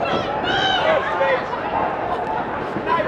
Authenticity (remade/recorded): recorded